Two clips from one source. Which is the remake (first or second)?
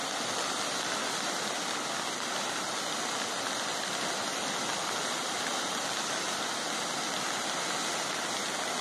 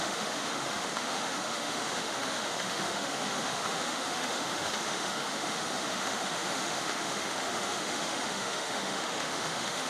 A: second